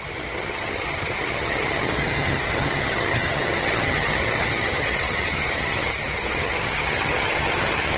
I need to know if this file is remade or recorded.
remade